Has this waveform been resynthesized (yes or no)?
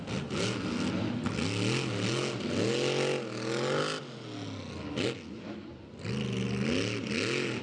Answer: no